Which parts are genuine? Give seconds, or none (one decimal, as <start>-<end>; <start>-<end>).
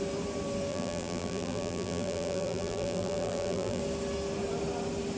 0.0-0.7; 3.8-5.2